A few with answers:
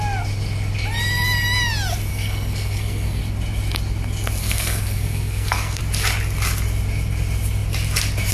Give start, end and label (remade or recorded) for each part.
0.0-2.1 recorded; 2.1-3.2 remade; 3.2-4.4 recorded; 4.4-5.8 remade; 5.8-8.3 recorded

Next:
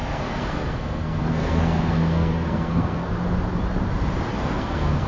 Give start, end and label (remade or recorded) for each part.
0.0-3.1 remade; 3.1-4.3 recorded; 4.3-5.1 remade

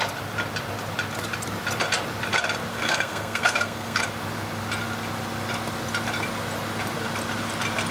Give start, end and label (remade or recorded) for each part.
0.0-2.7 recorded; 2.7-4.0 remade; 4.0-7.9 recorded

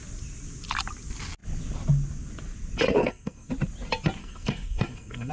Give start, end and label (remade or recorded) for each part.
0.0-3.0 recorded; 3.0-3.5 remade; 3.5-4.2 recorded; 4.2-5.3 remade

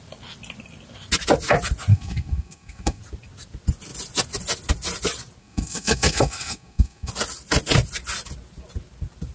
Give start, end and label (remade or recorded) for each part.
0.0-1.9 recorded; 1.9-3.0 remade; 3.0-5.4 recorded; 5.4-7.1 remade; 7.1-9.3 recorded

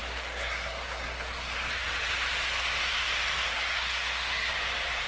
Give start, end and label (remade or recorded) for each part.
0.0-1.7 remade; 1.7-3.5 recorded; 3.5-4.5 remade; 4.5-5.1 recorded

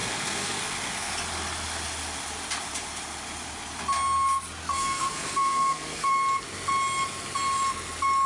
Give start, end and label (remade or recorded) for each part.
0.0-1.1 remade; 1.1-4.6 recorded; 4.6-6.1 remade; 6.1-8.3 recorded

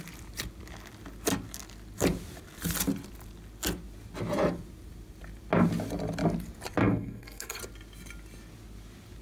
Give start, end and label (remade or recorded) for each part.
0.0-6.8 recorded; 6.8-7.6 remade; 7.6-9.2 recorded